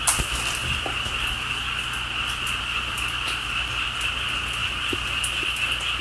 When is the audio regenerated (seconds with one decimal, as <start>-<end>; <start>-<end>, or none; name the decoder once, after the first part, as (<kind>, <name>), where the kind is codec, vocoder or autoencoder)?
none